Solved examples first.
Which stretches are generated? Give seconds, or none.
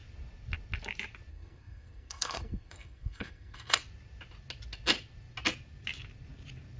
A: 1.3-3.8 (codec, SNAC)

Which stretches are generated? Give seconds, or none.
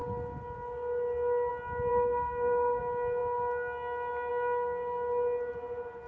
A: 1.9-2.8 (codec, SNAC)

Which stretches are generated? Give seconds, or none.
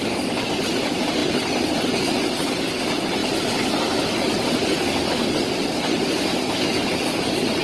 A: none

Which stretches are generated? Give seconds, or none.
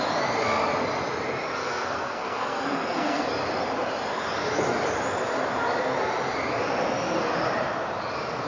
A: 1.6-3.3 (codec, SNAC)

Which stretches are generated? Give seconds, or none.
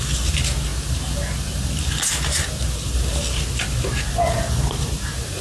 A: none